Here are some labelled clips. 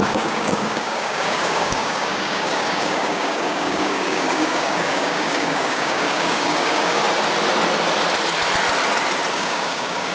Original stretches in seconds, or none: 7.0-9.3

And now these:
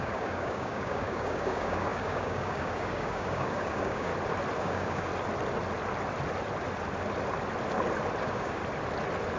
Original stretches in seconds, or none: 4.1-4.6; 5.1-8.2; 8.6-9.4

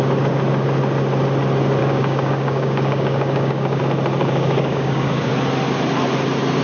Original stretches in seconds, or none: 0.0-1.8; 3.8-4.2; 5.3-6.6

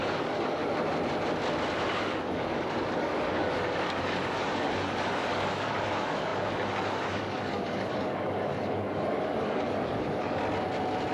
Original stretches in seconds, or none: 0.6-2.0; 10.4-11.1

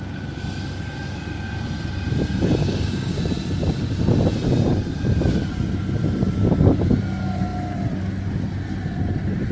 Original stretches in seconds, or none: 0.0-2.6; 3.2-9.5

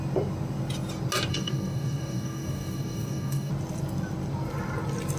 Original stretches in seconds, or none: 0.0-1.3; 3.5-5.2